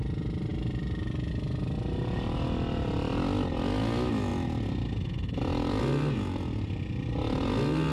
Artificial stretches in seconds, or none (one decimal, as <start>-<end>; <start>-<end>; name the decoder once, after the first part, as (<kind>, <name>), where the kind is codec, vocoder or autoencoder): none